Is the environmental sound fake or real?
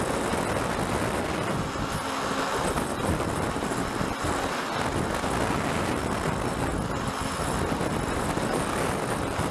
real